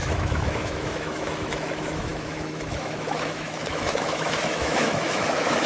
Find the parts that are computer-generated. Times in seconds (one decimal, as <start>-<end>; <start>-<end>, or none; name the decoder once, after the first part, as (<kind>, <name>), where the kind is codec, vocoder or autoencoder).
0.0-5.7 (autoencoder, DAC-VAE)